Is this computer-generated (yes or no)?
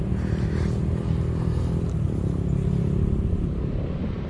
no